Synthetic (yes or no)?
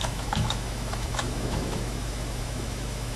yes